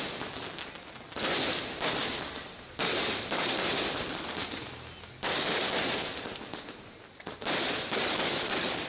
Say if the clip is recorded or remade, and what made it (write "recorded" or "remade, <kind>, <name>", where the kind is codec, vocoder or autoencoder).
recorded